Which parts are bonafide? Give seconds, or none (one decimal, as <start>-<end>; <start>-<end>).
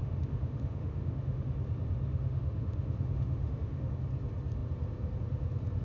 1.5-2.1; 3.9-5.8